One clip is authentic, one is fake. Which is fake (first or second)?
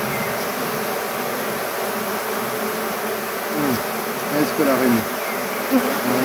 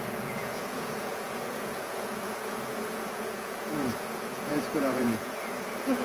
second